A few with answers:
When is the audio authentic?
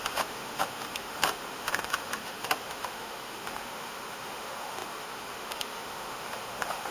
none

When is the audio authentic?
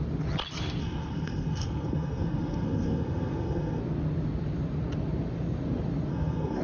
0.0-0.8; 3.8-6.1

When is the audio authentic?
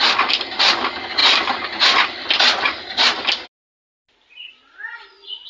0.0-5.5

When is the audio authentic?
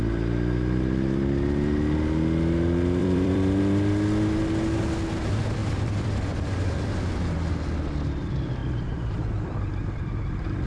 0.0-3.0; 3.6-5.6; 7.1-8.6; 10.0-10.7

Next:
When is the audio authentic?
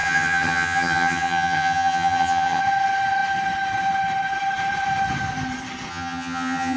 2.6-5.9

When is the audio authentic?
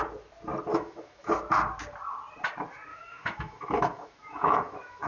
0.0-0.7; 1.3-2.9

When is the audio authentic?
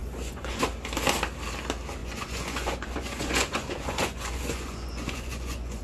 0.6-2.0